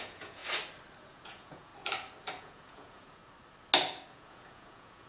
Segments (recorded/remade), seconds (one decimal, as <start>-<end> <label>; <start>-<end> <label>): 0.0-0.4 remade; 0.4-1.1 recorded; 1.1-1.7 remade; 1.7-2.4 recorded; 2.4-3.2 remade; 3.2-4.1 recorded; 4.1-5.1 remade